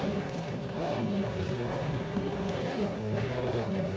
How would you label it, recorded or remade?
remade